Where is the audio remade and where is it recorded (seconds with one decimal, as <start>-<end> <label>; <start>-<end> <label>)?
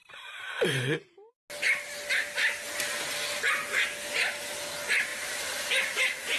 0.0-1.3 remade; 1.3-5.1 recorded; 5.1-5.7 remade; 5.7-6.4 recorded